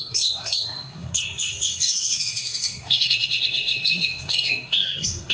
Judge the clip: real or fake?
fake